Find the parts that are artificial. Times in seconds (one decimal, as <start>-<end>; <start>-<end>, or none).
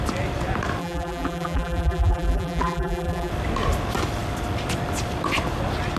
0.8-3.3